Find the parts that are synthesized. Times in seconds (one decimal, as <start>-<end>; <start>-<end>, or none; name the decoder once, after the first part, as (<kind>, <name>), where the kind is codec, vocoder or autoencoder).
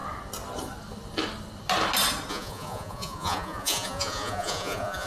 2.3-5.1 (vocoder, Vocos)